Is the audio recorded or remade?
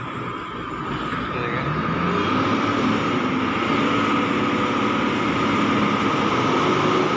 recorded